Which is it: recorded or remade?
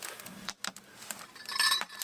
remade